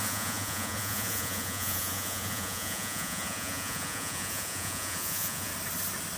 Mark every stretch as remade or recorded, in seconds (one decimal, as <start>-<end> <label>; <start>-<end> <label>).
0.0-5.5 remade; 5.5-6.2 recorded